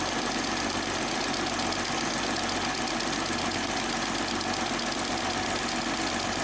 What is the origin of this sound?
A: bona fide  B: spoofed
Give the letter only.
A